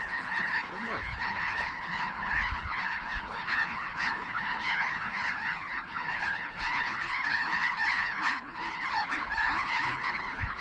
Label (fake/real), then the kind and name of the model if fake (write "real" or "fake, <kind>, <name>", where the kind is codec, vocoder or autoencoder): fake, codec, HILCodec